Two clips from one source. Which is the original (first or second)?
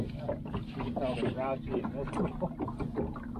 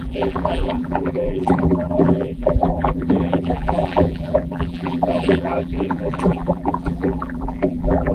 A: first